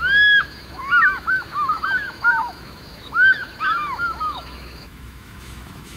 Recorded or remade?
remade